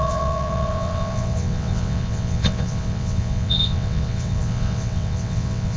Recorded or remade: remade